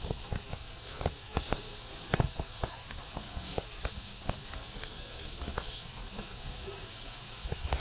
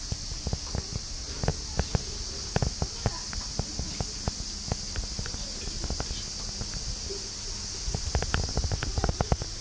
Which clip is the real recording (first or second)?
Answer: second